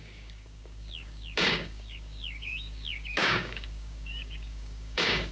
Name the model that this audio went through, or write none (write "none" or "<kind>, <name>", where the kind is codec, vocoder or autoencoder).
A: codec, DAC